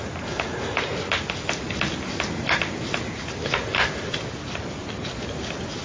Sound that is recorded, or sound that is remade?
recorded